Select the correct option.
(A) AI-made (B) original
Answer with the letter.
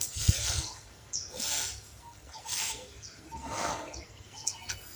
A